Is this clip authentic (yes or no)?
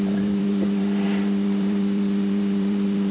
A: no